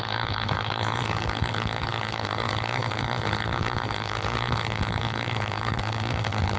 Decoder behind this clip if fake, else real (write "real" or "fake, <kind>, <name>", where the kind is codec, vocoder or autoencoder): fake, codec, SNAC